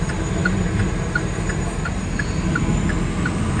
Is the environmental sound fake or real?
real